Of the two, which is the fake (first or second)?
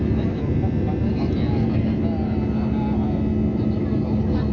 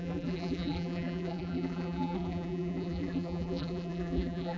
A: second